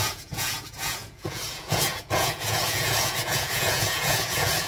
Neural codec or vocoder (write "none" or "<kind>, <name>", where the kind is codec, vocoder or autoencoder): vocoder, Vocos